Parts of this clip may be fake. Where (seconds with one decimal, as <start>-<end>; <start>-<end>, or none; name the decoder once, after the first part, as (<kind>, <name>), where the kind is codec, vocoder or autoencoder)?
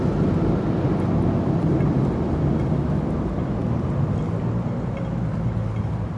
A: none